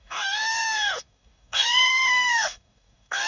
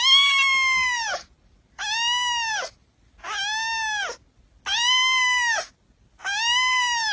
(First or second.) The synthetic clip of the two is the first